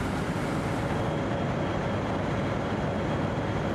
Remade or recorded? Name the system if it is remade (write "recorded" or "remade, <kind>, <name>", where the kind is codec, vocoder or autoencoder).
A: recorded